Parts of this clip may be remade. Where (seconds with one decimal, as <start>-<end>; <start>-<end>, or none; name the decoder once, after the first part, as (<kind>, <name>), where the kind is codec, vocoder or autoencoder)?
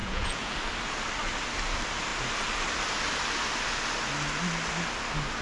0.0-0.5 (vocoder, Vocos)